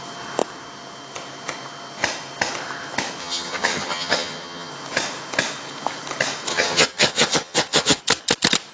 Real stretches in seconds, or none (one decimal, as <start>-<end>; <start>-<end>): 0.0-3.2; 4.7-6.5; 8.0-8.7